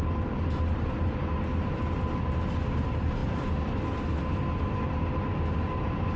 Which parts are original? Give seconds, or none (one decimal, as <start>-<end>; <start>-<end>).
0.0-6.2